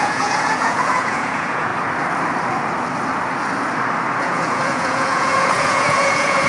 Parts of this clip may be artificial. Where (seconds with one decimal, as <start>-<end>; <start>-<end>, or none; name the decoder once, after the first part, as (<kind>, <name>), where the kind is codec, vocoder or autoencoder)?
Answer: 0.0-1.7 (vocoder, Vocos); 4.2-6.5